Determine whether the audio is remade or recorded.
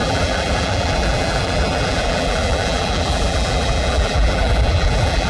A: remade